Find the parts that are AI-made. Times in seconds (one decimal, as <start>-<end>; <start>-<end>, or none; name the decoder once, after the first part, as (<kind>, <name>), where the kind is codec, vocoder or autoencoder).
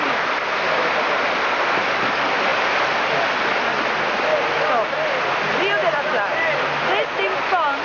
2.5-6.6 (vocoder, BigVGAN v2)